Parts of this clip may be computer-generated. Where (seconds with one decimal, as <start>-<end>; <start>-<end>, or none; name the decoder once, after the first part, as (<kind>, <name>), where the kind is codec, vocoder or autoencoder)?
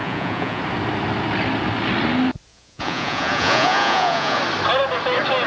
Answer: 0.0-0.6 (vocoder, Vocos); 2.5-4.4